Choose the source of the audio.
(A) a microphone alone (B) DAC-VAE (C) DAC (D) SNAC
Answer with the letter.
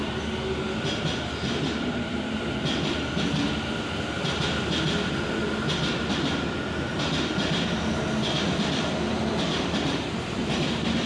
A